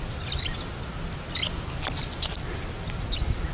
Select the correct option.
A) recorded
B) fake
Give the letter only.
A